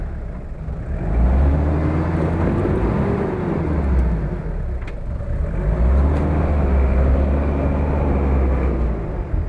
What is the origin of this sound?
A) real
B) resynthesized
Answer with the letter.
A